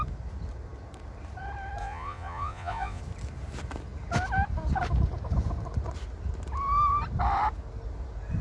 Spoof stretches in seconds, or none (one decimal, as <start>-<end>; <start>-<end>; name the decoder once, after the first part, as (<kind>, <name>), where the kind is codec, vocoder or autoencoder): 1.8-3.0 (vocoder, Vocos)